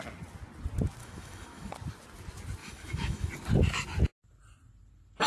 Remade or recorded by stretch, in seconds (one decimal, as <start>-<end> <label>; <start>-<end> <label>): 0.0-1.0 recorded; 1.0-1.7 remade; 1.7-2.6 recorded; 2.6-3.3 remade; 3.3-5.3 recorded